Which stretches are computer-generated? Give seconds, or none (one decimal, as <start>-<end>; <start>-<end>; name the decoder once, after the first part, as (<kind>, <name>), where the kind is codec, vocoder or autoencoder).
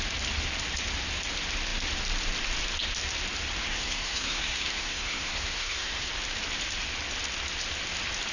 3.6-6.1 (codec, SNAC)